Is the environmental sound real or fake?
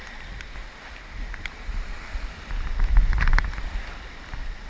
real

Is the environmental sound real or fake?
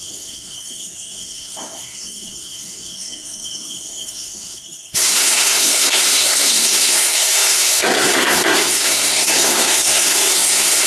fake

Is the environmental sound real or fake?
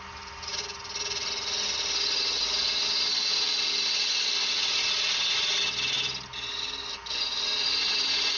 real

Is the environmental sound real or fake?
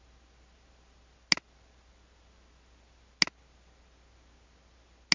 real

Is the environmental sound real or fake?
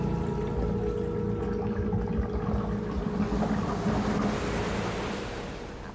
real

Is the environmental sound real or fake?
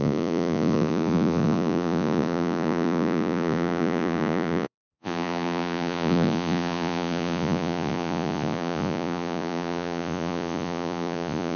fake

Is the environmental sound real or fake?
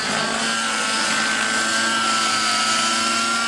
real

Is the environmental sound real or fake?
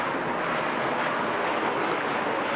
real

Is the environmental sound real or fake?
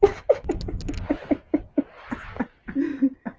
real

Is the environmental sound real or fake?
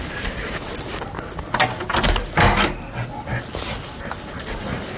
real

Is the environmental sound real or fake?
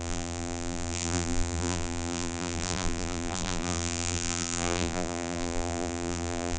fake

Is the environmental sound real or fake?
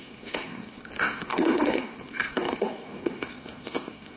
fake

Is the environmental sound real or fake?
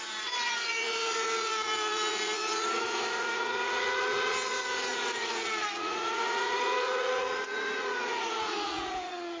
fake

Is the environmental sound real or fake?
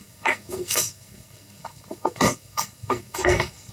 fake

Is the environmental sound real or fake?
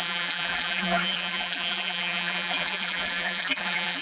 fake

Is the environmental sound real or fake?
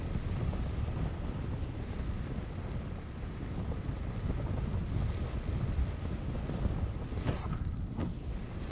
real